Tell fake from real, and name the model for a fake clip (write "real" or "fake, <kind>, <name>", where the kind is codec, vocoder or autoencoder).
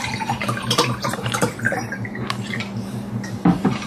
fake, vocoder, BigVGAN v2